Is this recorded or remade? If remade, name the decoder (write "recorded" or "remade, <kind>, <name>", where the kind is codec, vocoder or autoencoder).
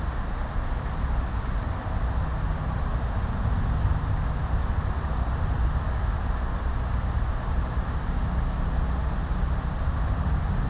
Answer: recorded